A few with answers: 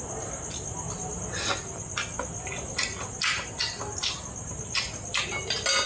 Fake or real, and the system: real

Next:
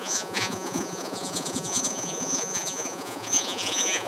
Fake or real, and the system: fake, vocoder, Vocos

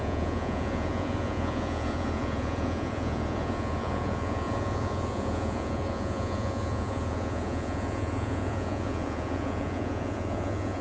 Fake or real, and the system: fake, vocoder, Vocos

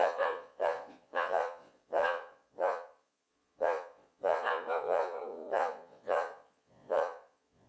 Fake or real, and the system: fake, vocoder, Vocos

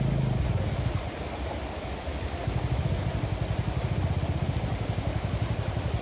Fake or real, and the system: real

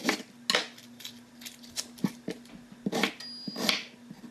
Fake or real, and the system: real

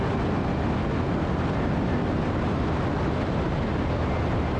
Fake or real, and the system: real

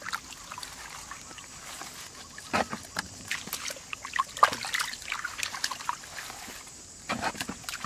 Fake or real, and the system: real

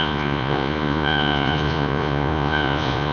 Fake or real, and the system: fake, vocoder, Vocos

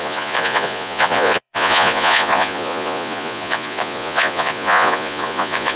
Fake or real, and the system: fake, vocoder, Vocos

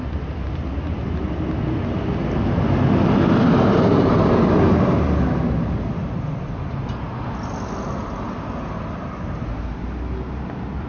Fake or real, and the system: real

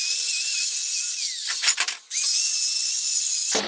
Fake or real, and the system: real